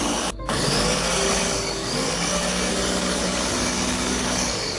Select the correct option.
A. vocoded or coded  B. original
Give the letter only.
A